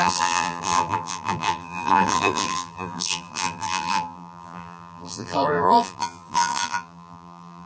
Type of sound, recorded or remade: remade